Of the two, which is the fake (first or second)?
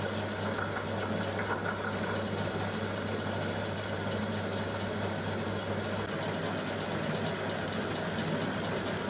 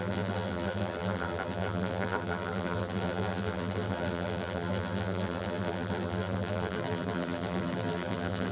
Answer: second